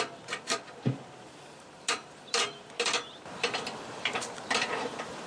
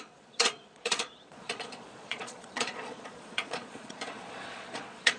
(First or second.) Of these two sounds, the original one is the first